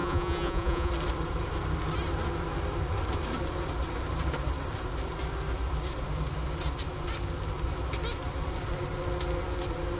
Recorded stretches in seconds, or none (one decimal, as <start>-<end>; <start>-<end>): 0.9-10.0